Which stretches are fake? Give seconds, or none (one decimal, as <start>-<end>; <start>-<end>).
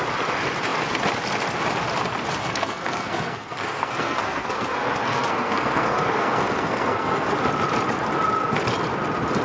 2.4-7.3